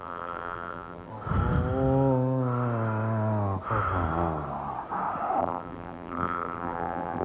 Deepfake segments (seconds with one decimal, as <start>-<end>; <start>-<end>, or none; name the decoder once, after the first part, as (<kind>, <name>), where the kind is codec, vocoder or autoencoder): 0.0-1.1 (vocoder, BigVGAN v2); 5.4-7.2